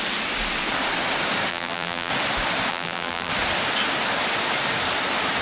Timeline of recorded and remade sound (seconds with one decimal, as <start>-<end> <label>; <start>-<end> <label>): 0.0-1.5 recorded; 1.5-2.1 remade; 2.1-2.7 recorded; 2.7-3.3 remade; 3.3-5.4 recorded